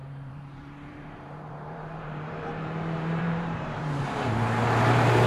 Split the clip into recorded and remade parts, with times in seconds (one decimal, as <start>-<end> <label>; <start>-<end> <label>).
0.0-5.3 remade